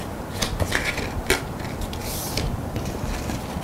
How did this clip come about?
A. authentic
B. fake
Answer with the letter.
A